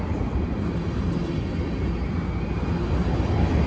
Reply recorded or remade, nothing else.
recorded